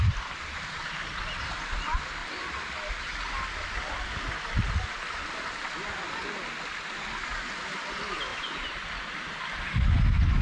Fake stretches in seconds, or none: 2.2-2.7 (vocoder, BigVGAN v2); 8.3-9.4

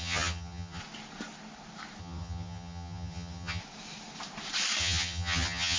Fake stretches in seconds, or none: 0.0-0.8 (vocoder, HiFi-GAN); 2.0-3.6; 4.8-5.8

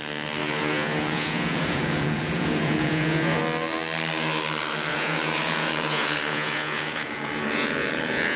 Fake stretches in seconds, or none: 0.4-3.4 (vocoder, Vocos); 4.9-8.4

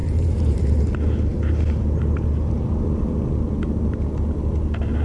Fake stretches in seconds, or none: 0.0-0.8 (vocoder, BigVGAN v2)

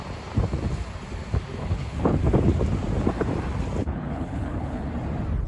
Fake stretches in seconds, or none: 1.6-2.2 (codec, HILCodec); 3.8-4.9

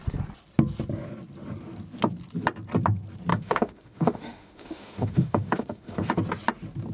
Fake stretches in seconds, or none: 3.3-6.1 (autoencoder, DAC-VAE)